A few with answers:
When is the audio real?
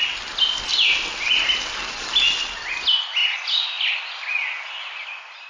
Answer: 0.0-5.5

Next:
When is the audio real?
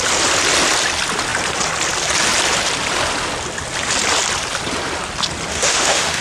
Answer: 0.0-5.5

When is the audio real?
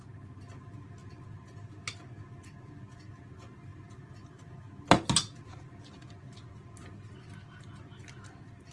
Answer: 0.0-8.7